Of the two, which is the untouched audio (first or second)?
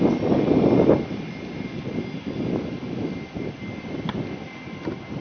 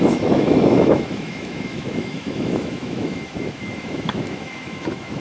first